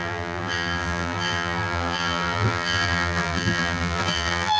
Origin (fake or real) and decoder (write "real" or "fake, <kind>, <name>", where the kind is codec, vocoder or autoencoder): fake, vocoder, BigVGAN v2